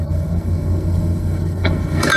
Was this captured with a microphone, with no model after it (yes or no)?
no